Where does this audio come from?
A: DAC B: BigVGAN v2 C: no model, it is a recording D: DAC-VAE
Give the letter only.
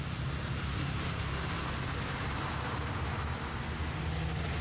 C